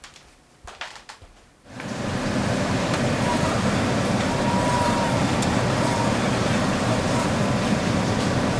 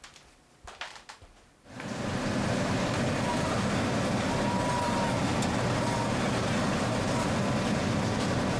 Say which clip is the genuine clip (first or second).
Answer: second